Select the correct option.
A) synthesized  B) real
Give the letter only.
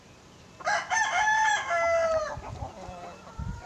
B